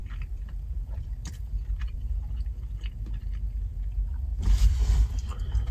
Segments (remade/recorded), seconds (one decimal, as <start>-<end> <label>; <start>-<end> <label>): 0.0-2.3 remade; 2.3-4.3 recorded; 4.3-5.3 remade; 5.3-5.7 recorded